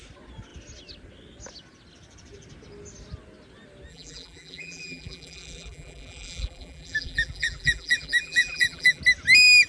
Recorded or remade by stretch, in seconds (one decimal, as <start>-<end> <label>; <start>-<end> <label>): 0.0-3.9 recorded; 3.9-9.0 remade; 9.0-9.7 recorded

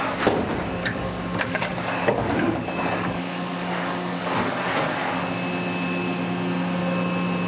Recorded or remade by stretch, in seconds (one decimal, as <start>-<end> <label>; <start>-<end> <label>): 0.0-0.8 recorded; 0.8-4.6 remade; 4.6-7.5 recorded

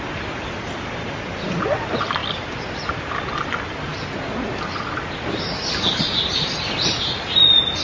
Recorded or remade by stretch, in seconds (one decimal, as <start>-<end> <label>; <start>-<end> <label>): 0.0-7.8 recorded

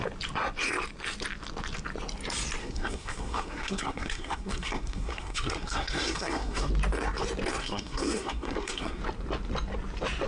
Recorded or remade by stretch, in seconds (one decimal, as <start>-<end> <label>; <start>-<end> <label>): 0.0-2.6 recorded; 2.6-6.7 remade; 6.7-7.6 recorded; 7.6-9.0 remade; 9.0-10.3 recorded